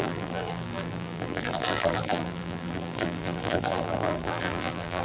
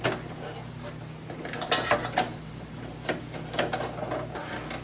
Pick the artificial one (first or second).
first